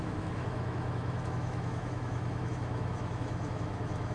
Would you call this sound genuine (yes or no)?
no